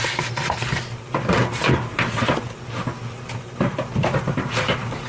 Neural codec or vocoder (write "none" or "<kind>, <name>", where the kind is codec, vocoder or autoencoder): none